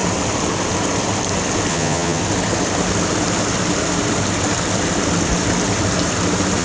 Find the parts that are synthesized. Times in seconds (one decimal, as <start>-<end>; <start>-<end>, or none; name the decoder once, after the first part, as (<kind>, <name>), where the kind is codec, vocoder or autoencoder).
1.7-2.2 (vocoder, HiFi-GAN)